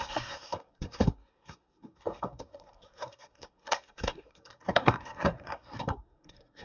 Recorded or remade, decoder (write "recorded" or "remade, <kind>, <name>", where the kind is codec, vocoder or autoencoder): remade, codec, SNAC